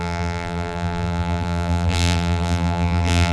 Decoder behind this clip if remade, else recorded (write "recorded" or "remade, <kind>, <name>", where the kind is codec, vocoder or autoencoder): remade, vocoder, BigVGAN v2